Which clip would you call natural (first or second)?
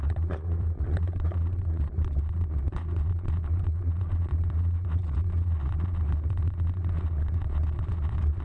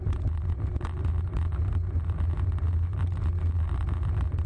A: second